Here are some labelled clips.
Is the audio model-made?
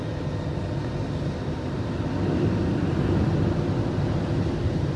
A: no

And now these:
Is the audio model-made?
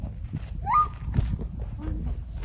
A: no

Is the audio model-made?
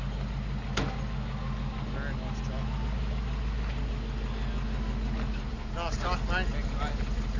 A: no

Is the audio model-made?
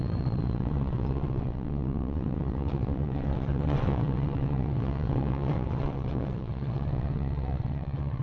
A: yes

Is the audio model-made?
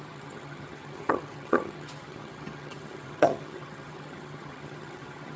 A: yes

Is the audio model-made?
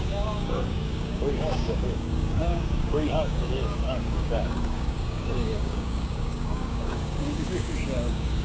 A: yes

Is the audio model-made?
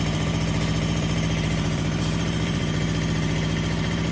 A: yes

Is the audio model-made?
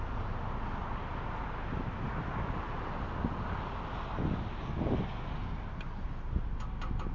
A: no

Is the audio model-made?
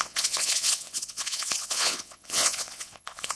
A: yes